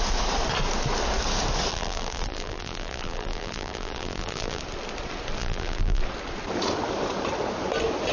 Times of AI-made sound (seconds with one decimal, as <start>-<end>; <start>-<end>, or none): 1.7-4.6; 5.4-6.0

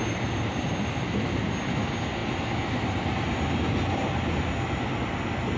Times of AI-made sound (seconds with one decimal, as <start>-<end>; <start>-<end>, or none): none

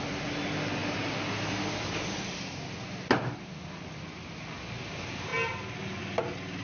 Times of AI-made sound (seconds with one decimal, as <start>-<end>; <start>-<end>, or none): none